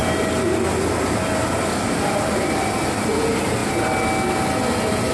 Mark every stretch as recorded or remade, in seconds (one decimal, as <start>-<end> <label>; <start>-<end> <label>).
0.0-5.1 recorded